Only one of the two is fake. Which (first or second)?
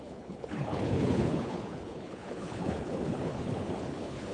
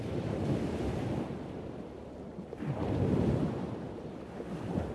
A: first